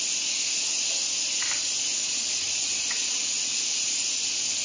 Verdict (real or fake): real